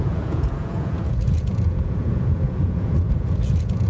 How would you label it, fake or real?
fake